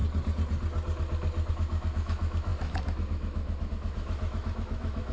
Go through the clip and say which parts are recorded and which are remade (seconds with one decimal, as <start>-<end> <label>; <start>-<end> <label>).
0.0-1.5 recorded; 1.5-5.1 remade